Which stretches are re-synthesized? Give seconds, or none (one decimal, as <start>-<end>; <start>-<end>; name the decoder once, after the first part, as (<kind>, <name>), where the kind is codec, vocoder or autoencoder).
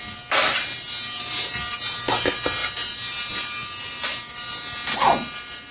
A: none